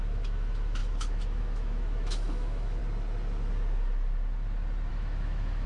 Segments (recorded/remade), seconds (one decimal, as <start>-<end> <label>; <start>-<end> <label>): 0.0-2.8 remade; 2.8-4.9 recorded; 4.9-5.7 remade